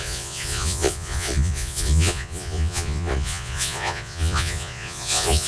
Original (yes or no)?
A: no